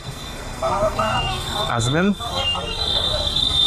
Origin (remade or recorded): remade